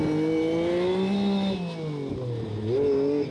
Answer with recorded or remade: recorded